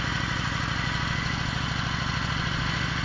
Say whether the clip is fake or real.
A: real